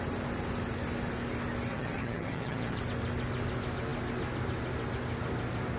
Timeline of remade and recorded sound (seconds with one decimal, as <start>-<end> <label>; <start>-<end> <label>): 0.0-1.7 recorded; 1.7-2.8 remade; 2.8-5.8 recorded